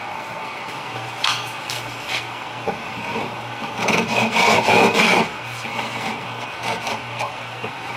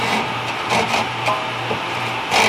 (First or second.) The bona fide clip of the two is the second